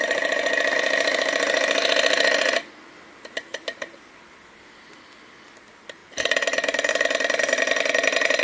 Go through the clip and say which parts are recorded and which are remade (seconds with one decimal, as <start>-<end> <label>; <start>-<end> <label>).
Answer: 0.0-6.0 recorded; 6.0-6.9 remade; 6.9-8.4 recorded